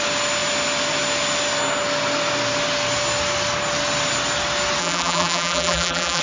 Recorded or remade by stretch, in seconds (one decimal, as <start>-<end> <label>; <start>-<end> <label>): 0.0-4.8 recorded; 4.8-6.2 remade